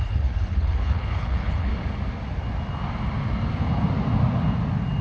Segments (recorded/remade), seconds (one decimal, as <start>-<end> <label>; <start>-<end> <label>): 0.0-1.7 remade; 1.7-5.0 recorded